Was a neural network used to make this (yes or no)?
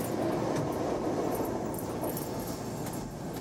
no